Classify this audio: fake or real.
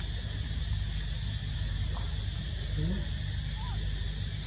real